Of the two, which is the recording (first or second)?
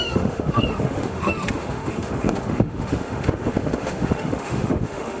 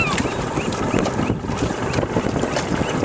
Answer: second